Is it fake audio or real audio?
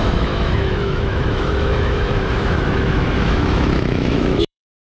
fake